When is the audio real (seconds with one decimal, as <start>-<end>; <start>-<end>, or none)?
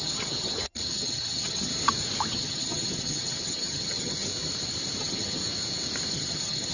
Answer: 1.7-2.3; 4.3-5.0; 5.4-6.1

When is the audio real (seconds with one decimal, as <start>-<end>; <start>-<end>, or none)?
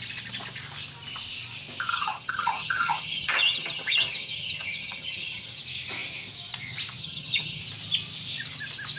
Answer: 0.0-1.9; 5.6-7.0; 7.6-9.0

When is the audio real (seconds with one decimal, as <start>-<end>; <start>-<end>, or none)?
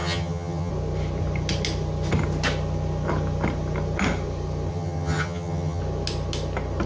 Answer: 0.7-4.7; 5.8-6.9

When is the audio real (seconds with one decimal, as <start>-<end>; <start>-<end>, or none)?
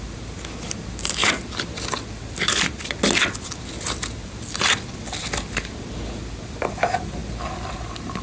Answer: 0.0-8.2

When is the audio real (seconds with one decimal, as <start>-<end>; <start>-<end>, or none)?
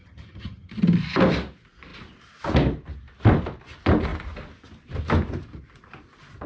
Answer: 0.7-6.5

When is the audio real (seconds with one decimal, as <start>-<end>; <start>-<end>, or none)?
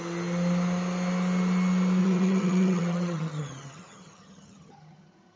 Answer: 0.0-2.0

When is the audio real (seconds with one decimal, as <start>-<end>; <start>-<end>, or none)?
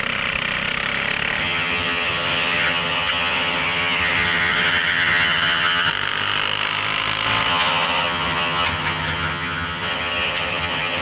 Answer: 0.0-1.4; 5.9-7.5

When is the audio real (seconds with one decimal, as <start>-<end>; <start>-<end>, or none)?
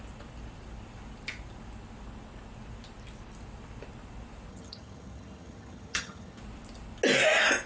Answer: 0.0-4.5; 6.4-7.7